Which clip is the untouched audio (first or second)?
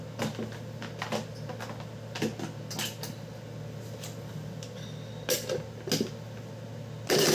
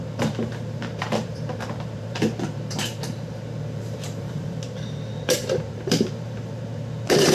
first